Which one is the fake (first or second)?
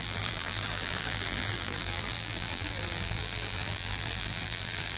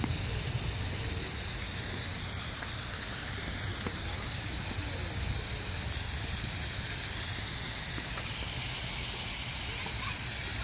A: first